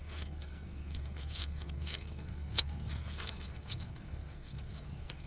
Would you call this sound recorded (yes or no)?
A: no